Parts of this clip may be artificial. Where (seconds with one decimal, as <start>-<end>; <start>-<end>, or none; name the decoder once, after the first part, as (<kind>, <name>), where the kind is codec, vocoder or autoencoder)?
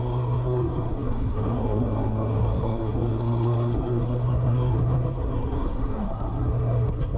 0.0-7.2 (codec, SNAC)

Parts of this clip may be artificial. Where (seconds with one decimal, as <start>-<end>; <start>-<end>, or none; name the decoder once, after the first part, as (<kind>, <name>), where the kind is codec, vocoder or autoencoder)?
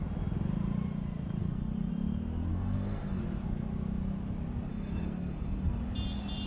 1.4-1.9 (codec, SNAC); 2.5-3.2; 4.7-5.8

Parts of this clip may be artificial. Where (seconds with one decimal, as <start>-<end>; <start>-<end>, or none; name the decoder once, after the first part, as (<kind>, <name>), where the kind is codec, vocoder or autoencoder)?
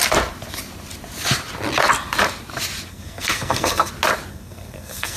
2.9-3.9 (codec, SNAC); 4.3-5.2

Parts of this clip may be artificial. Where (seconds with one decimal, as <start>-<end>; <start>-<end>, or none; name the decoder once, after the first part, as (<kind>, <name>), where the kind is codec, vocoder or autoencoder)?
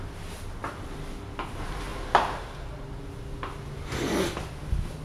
none